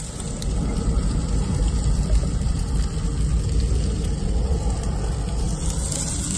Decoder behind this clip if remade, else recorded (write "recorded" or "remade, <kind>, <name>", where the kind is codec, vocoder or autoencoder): recorded